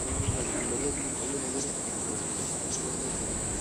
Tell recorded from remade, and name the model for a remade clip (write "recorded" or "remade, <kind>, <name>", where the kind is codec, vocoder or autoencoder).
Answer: remade, autoencoder, DAC-VAE